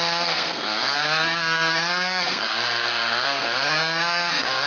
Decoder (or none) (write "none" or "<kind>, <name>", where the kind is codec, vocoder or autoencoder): codec, SNAC